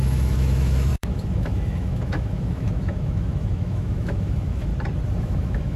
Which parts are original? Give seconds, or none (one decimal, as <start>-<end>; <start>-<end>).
4.7-5.2